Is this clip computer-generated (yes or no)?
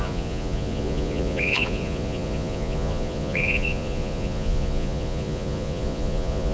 yes